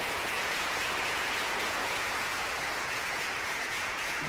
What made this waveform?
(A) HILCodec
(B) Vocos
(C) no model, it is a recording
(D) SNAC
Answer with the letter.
B